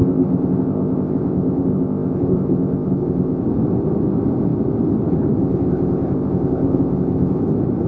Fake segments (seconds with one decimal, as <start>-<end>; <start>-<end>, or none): 0.0-3.4; 5.4-7.4